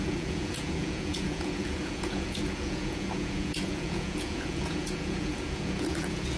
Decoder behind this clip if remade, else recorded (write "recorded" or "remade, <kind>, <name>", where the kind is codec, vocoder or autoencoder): remade, vocoder, Vocos